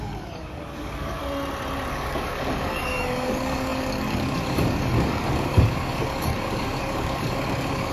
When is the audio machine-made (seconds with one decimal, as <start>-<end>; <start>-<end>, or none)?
0.0-1.2; 1.9-7.9